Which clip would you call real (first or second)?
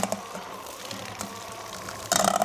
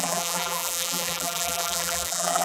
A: first